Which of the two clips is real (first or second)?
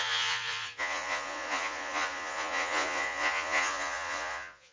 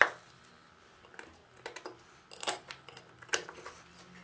second